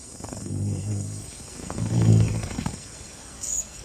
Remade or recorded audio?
remade